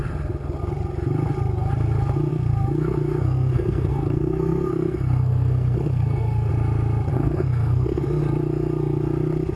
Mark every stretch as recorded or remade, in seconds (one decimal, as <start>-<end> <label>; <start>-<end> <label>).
0.0-2.3 recorded; 2.3-6.5 remade; 6.5-7.1 recorded; 7.1-8.2 remade; 8.2-9.6 recorded